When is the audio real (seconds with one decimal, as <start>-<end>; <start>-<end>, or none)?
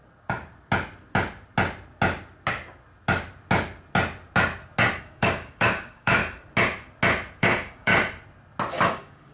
0.0-5.0; 6.2-7.4; 7.9-8.7